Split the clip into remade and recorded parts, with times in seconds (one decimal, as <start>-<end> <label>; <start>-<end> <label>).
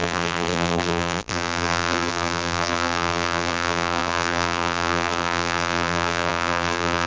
0.0-7.1 remade